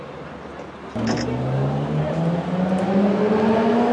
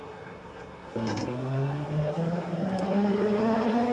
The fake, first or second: second